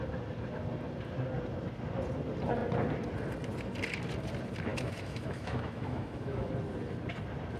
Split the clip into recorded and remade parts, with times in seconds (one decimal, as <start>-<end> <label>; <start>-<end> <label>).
0.0-4.7 recorded; 4.7-6.5 remade; 6.5-7.6 recorded